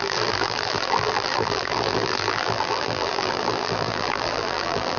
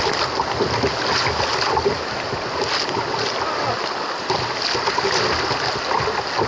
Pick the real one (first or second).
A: second